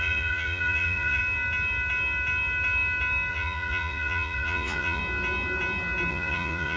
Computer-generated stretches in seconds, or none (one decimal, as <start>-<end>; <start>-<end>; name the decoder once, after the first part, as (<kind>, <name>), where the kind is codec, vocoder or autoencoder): 0.0-1.2 (vocoder, Vocos); 3.3-5.0; 6.1-6.8